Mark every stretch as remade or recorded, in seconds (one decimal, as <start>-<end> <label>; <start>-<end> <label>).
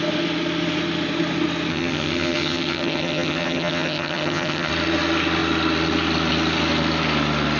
0.0-1.7 recorded; 1.7-4.7 remade; 4.7-7.6 recorded